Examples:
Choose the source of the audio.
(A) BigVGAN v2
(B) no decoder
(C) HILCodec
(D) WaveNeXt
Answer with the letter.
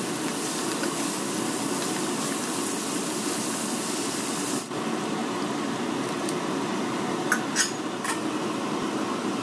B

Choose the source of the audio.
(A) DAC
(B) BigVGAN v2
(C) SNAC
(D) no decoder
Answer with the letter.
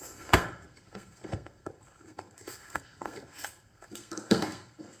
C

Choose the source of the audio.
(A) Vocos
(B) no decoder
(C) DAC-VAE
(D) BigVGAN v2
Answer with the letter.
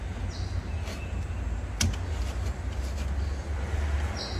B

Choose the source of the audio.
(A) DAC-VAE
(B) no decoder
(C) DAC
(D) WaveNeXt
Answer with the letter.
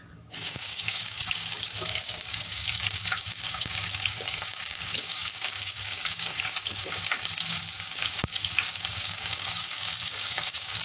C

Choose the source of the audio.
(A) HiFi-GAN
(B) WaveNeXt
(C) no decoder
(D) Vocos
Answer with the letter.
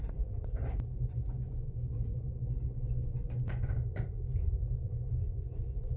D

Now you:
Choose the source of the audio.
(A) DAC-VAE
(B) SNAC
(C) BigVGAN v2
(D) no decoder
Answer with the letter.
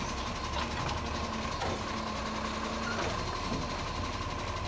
D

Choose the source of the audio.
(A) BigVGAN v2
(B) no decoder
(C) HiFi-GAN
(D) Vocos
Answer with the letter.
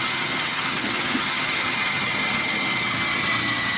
C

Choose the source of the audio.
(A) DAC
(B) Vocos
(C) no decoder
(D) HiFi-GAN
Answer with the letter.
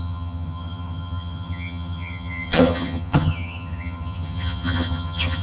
D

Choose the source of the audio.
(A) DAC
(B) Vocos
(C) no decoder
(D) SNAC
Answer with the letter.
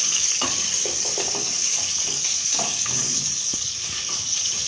A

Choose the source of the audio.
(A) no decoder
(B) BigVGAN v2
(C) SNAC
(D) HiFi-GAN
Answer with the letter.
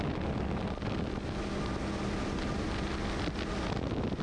A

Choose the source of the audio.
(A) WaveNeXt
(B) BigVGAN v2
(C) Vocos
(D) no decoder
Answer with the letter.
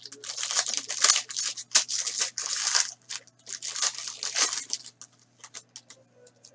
D